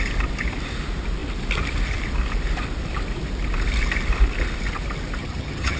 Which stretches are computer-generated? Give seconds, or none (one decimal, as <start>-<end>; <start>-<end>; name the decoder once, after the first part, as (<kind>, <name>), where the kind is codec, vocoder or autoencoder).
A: 5.2-5.8 (vocoder, HiFi-GAN)